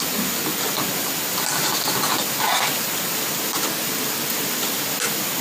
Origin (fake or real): real